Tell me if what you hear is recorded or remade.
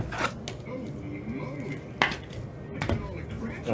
recorded